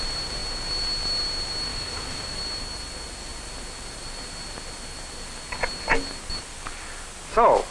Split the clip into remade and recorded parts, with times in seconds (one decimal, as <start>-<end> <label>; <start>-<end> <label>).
0.0-1.7 recorded; 1.7-2.4 remade; 2.4-7.7 recorded